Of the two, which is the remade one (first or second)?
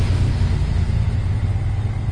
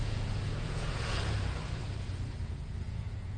second